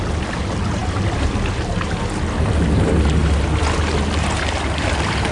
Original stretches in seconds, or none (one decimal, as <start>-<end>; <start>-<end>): 0.0-5.3